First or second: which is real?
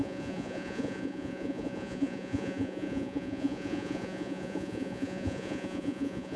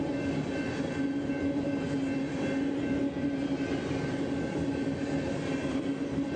second